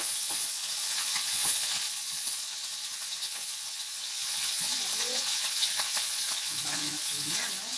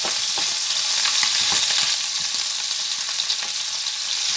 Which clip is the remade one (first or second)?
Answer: first